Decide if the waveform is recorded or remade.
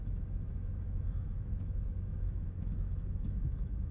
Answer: remade